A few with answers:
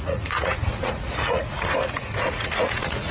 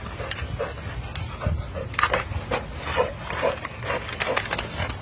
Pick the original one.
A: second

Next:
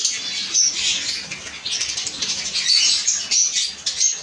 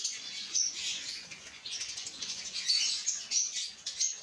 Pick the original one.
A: first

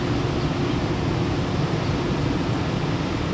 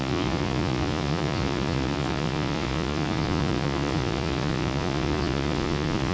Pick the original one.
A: first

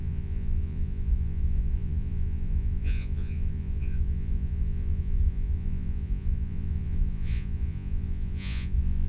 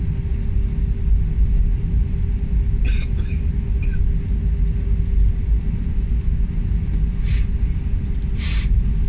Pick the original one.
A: second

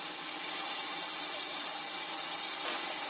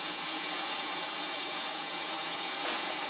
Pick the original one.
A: first